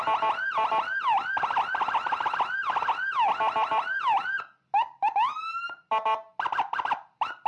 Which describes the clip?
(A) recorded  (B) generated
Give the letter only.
A